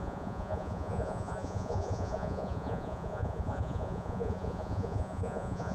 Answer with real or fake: fake